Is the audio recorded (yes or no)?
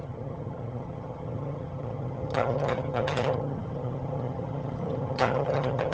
no